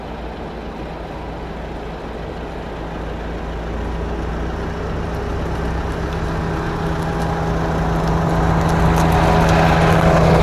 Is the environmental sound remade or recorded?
recorded